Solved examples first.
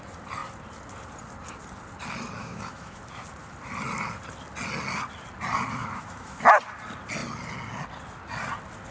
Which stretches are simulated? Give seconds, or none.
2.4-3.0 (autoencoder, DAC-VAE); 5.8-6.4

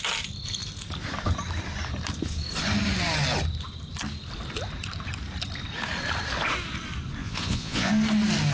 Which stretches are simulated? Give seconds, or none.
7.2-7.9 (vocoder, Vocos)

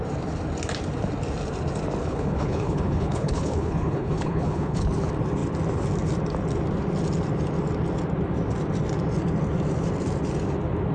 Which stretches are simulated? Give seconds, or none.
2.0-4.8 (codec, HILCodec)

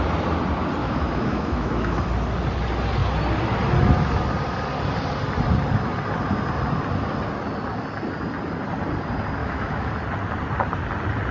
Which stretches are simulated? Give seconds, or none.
0.8-2.0 (autoencoder, DAC-VAE); 9.4-9.9

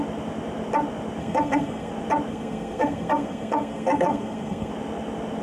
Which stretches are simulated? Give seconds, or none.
1.2-1.9 (codec, SNAC); 2.3-4.7

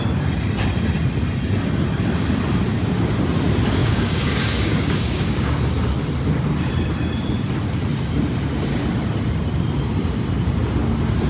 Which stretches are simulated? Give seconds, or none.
3.8-5.5 (codec, DAC)